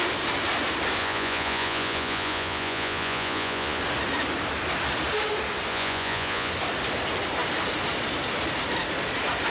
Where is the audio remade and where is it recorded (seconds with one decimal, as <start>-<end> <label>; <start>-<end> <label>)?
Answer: 0.0-1.0 recorded; 1.0-3.8 remade; 3.8-5.7 recorded; 5.7-6.5 remade; 6.5-9.5 recorded